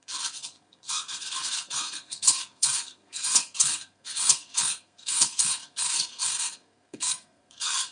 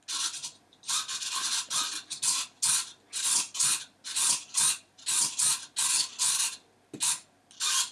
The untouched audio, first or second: second